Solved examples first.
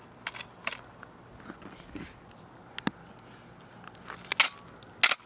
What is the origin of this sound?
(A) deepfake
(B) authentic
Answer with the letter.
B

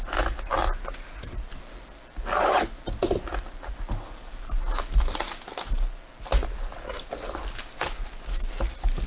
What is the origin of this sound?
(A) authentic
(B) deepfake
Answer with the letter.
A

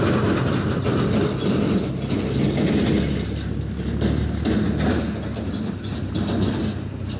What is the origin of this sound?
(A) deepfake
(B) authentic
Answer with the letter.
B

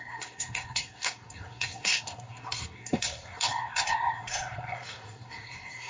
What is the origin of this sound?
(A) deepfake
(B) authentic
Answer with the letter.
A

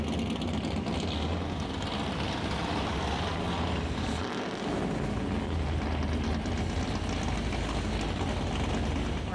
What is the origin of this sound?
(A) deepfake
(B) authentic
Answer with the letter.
B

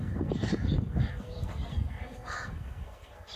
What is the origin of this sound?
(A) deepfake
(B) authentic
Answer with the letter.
A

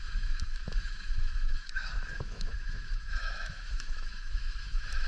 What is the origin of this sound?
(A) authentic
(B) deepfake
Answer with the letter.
B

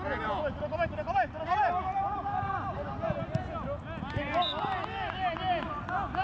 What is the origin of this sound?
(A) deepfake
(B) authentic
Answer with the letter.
B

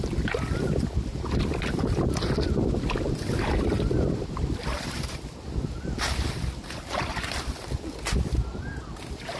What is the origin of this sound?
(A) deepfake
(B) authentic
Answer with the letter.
B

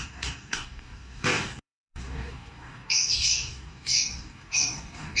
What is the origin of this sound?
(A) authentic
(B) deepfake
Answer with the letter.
B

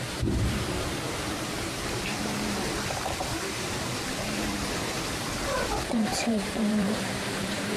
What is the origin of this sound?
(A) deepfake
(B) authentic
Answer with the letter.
A